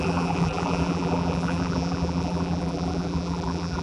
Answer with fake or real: fake